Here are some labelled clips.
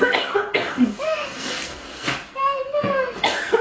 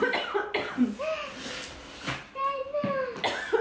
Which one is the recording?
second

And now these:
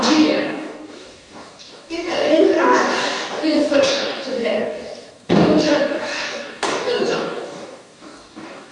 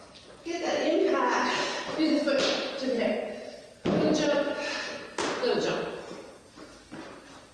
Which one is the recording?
second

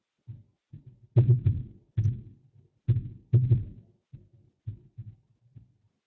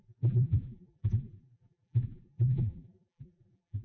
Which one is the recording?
first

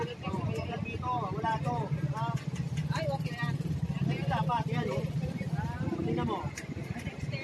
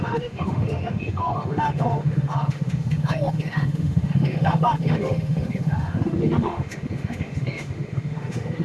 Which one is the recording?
first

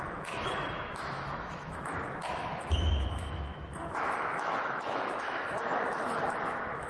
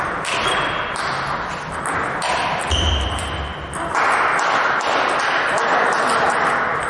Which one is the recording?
second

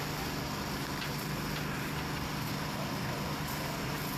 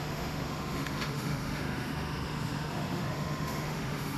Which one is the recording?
first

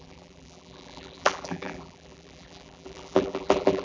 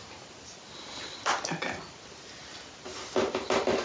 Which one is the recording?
second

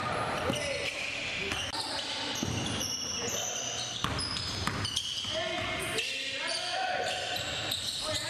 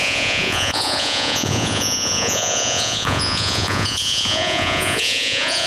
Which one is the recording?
first